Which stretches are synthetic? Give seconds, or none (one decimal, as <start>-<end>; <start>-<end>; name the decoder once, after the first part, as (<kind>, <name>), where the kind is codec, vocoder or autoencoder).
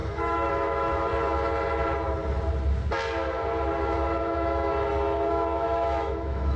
0.0-1.1 (autoencoder, DAC-VAE); 4.2-4.7; 5.3-6.6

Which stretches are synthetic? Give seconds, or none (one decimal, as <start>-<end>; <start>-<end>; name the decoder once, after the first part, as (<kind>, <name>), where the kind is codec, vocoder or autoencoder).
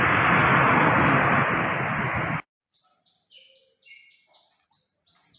none